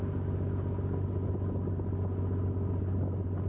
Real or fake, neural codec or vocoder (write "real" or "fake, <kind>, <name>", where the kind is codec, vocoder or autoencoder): real